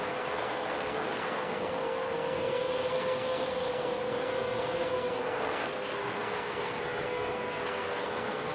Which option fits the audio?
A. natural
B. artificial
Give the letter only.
B